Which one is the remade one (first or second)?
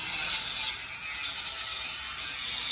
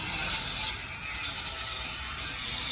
second